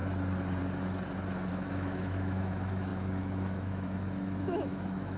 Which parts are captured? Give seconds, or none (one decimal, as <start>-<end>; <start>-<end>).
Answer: 0.0-1.5